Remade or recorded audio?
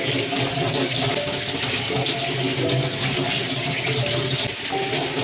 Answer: recorded